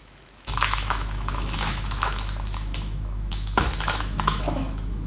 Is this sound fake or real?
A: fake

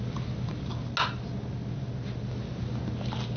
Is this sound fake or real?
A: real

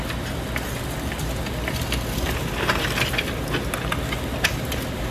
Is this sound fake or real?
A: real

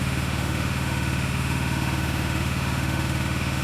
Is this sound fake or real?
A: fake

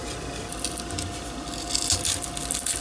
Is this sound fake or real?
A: real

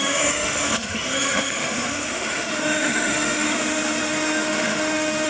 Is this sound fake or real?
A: fake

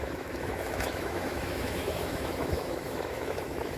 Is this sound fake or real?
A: fake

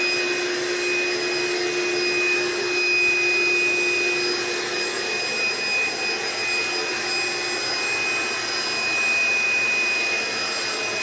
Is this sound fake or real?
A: real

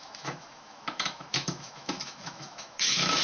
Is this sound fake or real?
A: fake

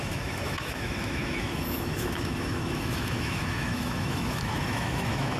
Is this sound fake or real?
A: fake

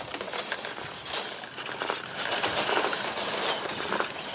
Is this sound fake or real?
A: real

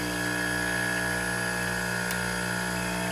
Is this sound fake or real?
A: real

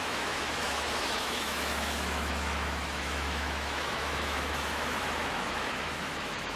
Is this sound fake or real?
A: fake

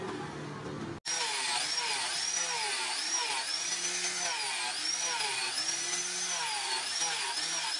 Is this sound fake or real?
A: real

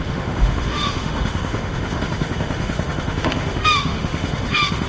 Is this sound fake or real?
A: fake